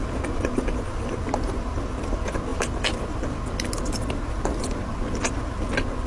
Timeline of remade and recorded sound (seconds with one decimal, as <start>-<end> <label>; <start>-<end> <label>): 0.0-6.1 recorded